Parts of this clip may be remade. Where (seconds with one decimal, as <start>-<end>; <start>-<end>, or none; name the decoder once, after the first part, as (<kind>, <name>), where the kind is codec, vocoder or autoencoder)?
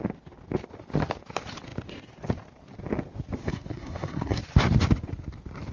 3.4-4.4 (codec, SNAC)